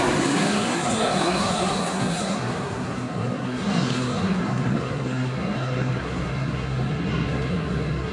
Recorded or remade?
remade